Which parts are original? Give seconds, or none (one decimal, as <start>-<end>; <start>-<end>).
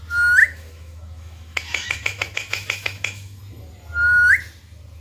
0.0-0.4; 3.4-5.0